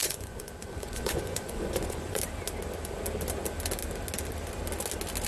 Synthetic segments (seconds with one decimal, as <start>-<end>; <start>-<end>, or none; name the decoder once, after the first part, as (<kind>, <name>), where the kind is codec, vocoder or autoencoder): 0.0-2.2 (vocoder, Vocos)